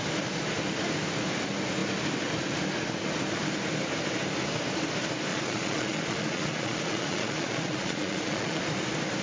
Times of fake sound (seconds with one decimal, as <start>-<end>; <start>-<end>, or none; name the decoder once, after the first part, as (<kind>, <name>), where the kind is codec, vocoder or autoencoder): 5.3-8.6 (vocoder, Vocos)